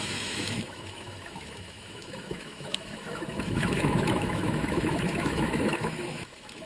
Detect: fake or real fake